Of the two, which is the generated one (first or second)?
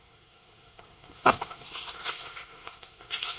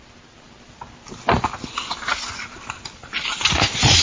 first